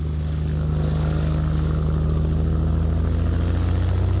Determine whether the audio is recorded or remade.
recorded